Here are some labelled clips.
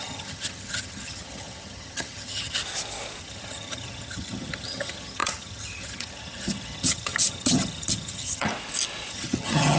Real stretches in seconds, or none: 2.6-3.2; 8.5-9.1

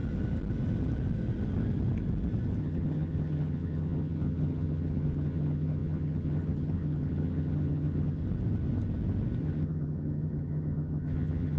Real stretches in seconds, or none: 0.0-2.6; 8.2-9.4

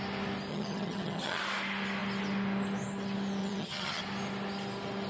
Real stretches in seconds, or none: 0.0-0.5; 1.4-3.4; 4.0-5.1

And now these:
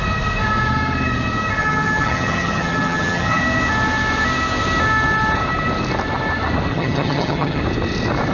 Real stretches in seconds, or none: 0.0-1.6; 3.4-6.7; 7.6-8.3

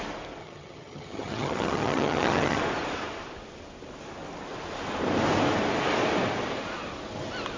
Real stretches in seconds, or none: 0.0-0.4; 2.6-7.6

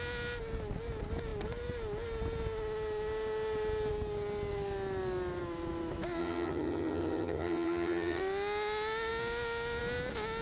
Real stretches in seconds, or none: 0.0-6.2; 8.2-10.4

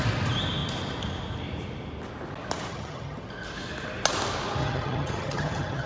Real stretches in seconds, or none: 0.0-2.7; 3.3-4.6